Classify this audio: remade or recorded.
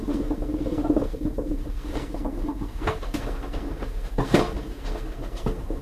remade